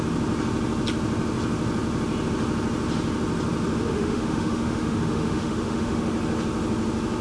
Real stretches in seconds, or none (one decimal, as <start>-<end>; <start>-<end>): 0.0-3.9; 6.0-7.2